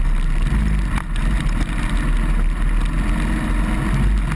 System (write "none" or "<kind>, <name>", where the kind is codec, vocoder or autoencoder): none